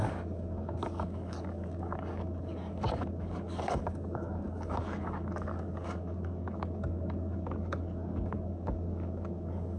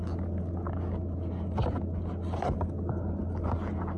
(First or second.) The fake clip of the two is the first